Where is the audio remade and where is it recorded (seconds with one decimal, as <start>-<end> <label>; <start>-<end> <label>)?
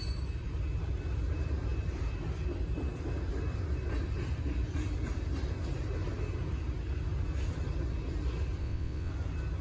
0.0-8.6 recorded; 8.6-9.1 remade; 9.1-9.6 recorded